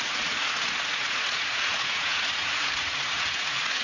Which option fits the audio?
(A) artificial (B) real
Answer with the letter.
A